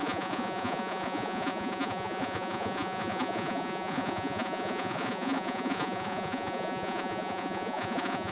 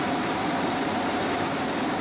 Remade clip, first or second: first